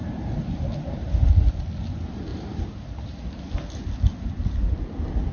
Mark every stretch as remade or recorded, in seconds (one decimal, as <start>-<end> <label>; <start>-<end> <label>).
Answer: 0.0-1.3 remade; 1.3-2.3 recorded; 2.3-3.5 remade; 3.5-5.3 recorded